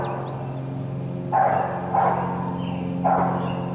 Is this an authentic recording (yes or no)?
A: yes